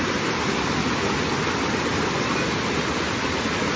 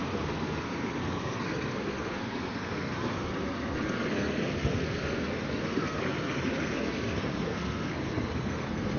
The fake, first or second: second